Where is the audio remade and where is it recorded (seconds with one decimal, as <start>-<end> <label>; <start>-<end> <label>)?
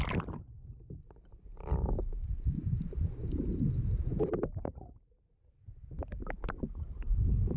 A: 0.0-7.6 recorded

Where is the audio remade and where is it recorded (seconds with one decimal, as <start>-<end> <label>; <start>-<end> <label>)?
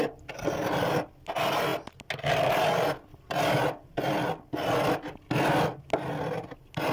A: 0.0-6.9 recorded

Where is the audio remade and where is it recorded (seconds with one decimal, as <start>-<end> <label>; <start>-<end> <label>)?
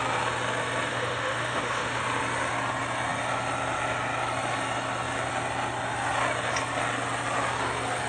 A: 0.0-0.9 recorded; 0.9-2.0 remade; 2.0-8.1 recorded